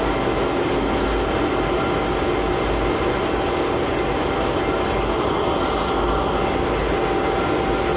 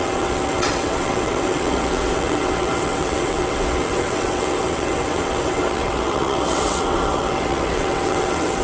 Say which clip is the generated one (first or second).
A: second